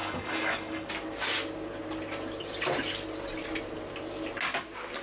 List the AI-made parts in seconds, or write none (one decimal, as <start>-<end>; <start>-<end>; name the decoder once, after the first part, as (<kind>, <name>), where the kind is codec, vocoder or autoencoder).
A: 0.0-0.9 (codec, DAC)